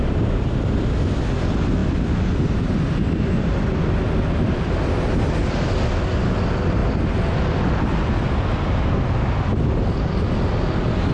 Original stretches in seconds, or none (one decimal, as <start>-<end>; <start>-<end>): 0.0-11.1